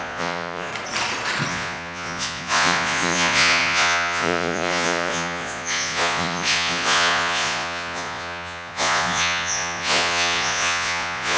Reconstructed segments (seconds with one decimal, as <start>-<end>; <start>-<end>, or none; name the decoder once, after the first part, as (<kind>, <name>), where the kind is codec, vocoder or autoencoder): 0.0-0.7 (vocoder, Vocos); 1.5-11.4